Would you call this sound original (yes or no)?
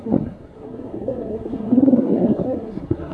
no